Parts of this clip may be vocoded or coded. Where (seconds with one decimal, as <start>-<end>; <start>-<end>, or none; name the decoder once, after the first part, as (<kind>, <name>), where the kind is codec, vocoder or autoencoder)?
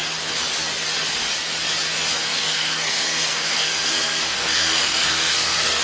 2.2-5.8 (codec, SNAC)